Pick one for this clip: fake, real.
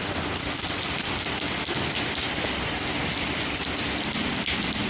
real